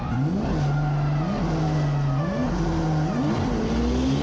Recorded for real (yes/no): yes